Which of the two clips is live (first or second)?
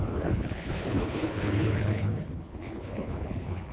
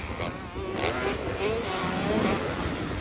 second